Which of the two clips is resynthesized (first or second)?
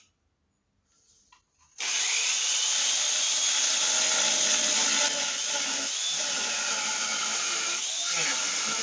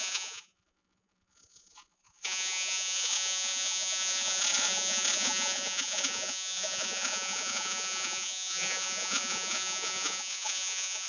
second